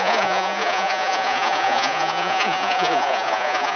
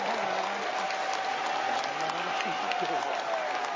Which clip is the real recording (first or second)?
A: second